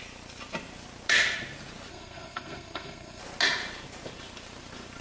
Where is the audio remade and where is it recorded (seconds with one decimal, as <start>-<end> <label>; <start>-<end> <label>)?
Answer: 0.0-1.9 recorded; 1.9-3.2 remade; 3.2-5.0 recorded